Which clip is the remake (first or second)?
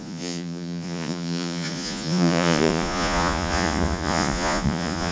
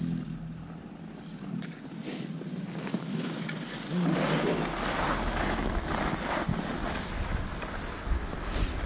first